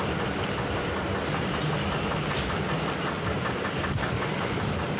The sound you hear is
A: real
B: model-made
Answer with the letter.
A